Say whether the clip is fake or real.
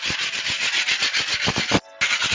real